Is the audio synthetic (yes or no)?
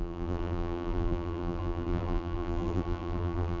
yes